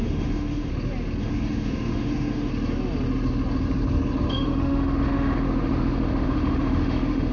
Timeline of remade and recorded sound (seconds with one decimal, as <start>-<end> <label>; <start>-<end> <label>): 0.0-0.7 remade; 0.7-1.2 recorded; 1.2-2.5 remade; 2.5-4.3 recorded; 4.3-7.3 remade